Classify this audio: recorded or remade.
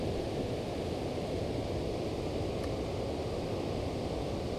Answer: recorded